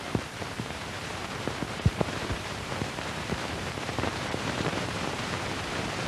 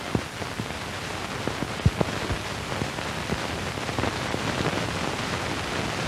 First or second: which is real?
second